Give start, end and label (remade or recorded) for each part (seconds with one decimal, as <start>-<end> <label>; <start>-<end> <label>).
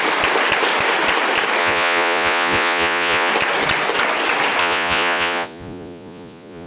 0.0-1.6 recorded; 1.6-3.3 remade; 3.3-4.6 recorded; 4.6-6.7 remade